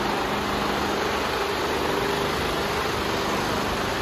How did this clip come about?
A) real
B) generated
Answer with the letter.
A